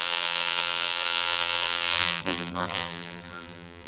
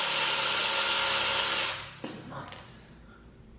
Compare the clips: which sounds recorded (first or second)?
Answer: second